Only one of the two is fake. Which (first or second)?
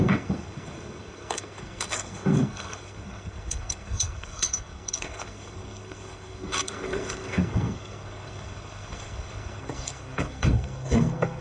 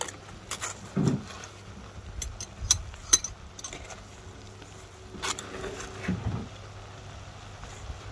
first